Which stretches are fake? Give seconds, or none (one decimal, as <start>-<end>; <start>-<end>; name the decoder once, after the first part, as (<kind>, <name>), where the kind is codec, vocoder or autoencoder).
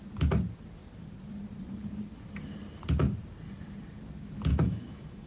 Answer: 4.5-5.3 (autoencoder, DAC-VAE)